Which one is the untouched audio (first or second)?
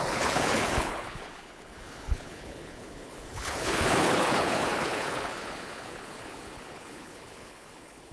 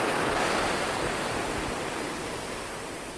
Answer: second